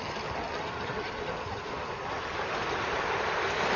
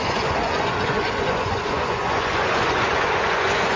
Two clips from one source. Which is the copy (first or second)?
second